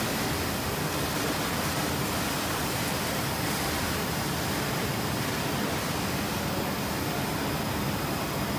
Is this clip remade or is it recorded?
recorded